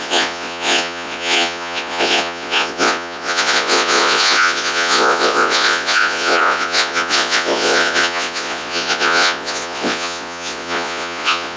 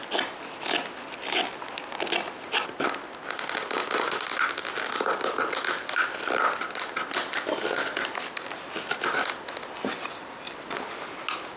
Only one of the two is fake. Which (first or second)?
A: first